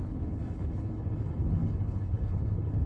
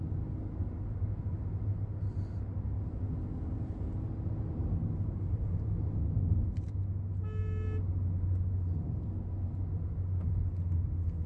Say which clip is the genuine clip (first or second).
second